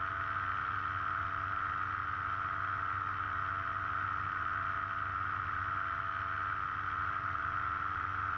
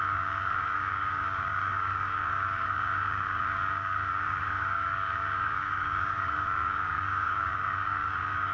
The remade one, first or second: second